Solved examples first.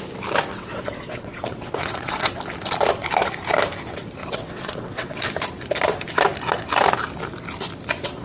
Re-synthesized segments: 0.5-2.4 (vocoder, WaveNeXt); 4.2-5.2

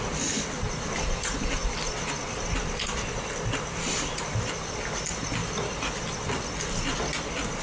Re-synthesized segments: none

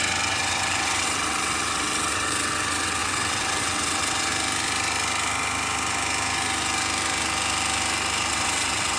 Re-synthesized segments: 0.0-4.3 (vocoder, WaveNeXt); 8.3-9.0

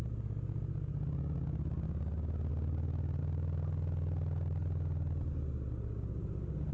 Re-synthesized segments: none

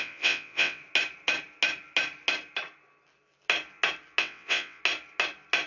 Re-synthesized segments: 0.0-0.8 (vocoder, WaveNeXt); 4.2-4.8

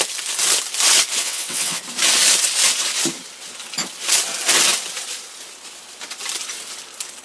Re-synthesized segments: 1.2-1.8 (vocoder, WaveNeXt)

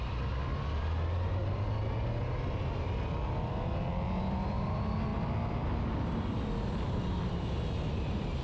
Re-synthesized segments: none

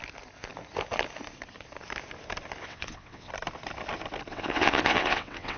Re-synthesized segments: 2.6-3.3 (vocoder, WaveNeXt); 4.3-5.6